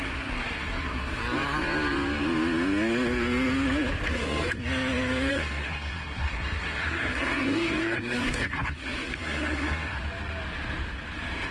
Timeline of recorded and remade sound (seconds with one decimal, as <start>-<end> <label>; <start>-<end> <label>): 0.0-1.2 remade; 1.2-4.1 recorded; 4.1-4.6 remade; 4.6-5.3 recorded; 5.3-10.0 remade; 10.0-11.5 recorded